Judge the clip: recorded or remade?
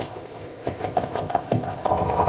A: remade